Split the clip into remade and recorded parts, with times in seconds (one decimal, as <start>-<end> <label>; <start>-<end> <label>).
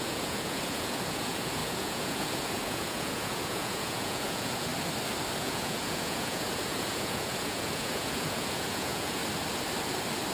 0.0-4.7 remade; 4.7-5.4 recorded; 5.4-9.2 remade; 9.2-10.3 recorded